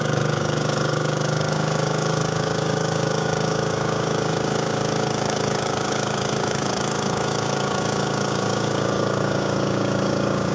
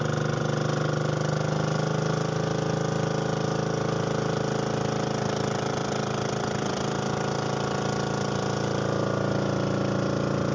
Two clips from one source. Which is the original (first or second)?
second